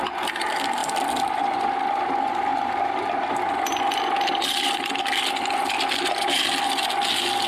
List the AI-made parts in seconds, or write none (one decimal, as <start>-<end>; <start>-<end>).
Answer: 0.8-1.4; 2.5-5.0